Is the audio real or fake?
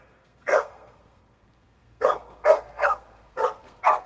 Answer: fake